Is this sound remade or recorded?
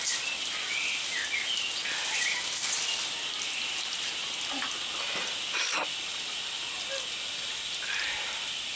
recorded